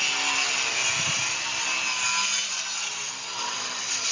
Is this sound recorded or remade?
recorded